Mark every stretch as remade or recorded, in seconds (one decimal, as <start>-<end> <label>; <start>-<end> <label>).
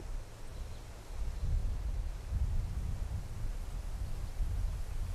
0.0-5.1 recorded